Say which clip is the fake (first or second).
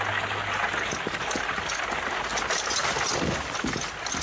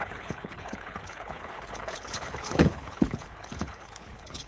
second